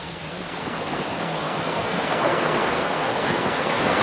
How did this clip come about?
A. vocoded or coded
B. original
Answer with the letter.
A